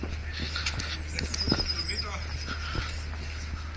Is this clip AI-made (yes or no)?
no